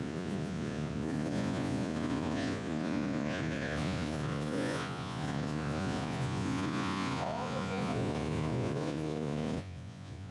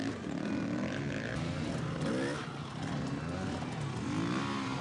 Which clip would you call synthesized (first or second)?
first